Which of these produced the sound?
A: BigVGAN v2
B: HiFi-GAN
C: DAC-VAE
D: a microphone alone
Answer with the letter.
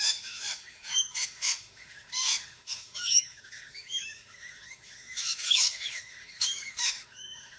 C